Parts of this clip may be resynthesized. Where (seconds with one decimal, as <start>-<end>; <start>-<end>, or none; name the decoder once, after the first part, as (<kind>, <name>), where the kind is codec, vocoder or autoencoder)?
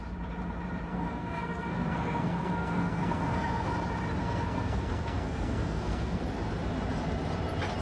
0.9-3.7 (codec, SNAC); 4.2-6.2